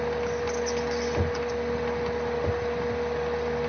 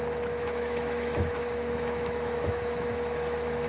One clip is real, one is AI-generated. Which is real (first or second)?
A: first